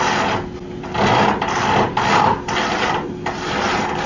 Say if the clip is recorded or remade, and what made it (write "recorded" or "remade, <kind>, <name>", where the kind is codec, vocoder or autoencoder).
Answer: recorded